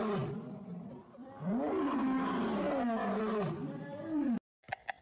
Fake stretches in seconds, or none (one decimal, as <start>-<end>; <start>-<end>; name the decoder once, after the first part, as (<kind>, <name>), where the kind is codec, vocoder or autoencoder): none